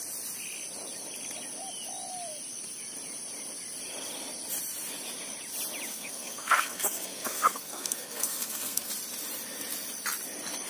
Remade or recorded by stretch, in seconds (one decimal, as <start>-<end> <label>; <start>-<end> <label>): 0.0-5.9 recorded; 5.9-8.9 remade; 8.9-10.7 recorded